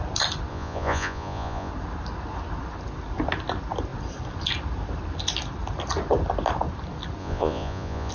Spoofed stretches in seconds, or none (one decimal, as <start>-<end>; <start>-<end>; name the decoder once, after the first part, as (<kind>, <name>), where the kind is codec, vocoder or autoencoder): 0.5-1.7 (vocoder, Vocos); 7.2-8.1